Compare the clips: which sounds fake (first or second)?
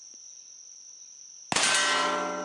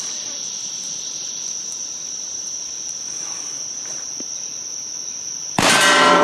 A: second